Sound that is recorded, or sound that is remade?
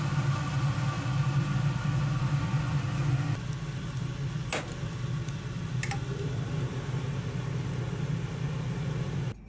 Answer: recorded